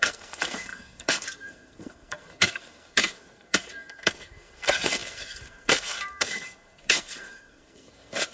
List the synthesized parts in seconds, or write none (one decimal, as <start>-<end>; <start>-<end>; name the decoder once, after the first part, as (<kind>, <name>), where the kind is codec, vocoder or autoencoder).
0.0-8.3 (codec, SNAC)